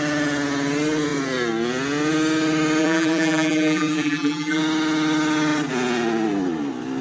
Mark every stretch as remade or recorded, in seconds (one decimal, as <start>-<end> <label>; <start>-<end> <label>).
0.0-2.8 recorded; 2.8-4.6 remade; 4.6-7.0 recorded